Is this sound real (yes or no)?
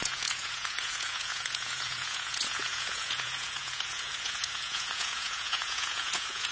no